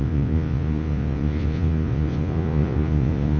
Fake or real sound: fake